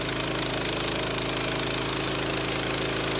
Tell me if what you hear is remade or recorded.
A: recorded